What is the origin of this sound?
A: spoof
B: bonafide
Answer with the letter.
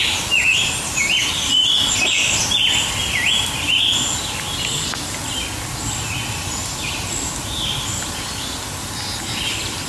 B